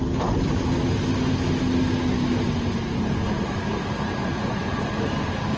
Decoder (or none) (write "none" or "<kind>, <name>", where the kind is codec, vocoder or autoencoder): none